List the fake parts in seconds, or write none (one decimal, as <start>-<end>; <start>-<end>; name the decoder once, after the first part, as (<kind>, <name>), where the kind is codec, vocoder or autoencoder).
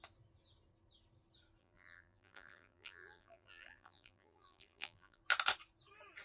1.6-5.2 (vocoder, BigVGAN v2)